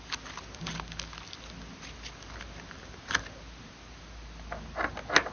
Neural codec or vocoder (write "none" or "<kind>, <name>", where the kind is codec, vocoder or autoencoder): none